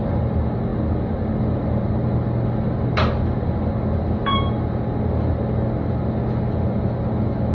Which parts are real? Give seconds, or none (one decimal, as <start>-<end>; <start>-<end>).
0.0-7.5